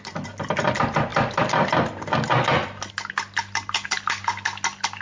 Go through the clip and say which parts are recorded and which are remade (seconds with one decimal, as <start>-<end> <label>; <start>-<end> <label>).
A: 0.0-5.0 recorded